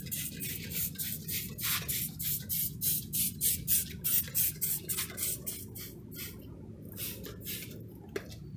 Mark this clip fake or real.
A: real